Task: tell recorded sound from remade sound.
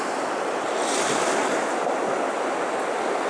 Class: recorded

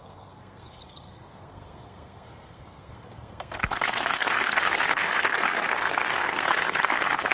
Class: remade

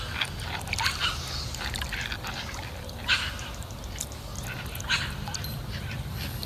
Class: recorded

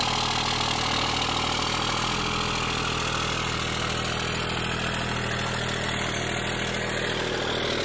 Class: recorded